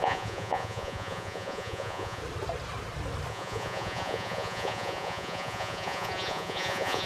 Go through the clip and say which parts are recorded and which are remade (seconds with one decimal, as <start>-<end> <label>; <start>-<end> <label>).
0.0-2.2 remade; 2.2-3.3 recorded; 3.3-7.1 remade